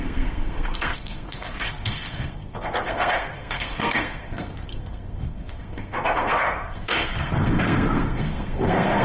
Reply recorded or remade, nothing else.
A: remade